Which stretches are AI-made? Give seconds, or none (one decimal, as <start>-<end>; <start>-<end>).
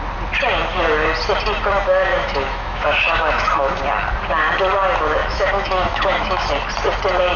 2.1-3.8; 5.2-6.5